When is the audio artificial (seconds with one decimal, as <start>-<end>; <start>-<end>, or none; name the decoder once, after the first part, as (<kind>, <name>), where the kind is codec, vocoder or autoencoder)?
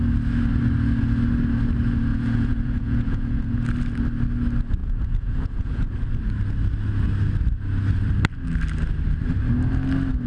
2.1-3.6 (vocoder, Vocos); 4.8-5.9